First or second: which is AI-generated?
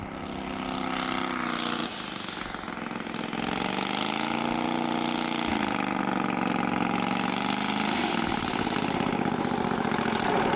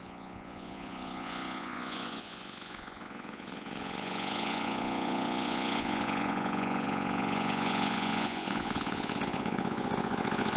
second